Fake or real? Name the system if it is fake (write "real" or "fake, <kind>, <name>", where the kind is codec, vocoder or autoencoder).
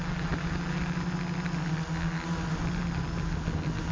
real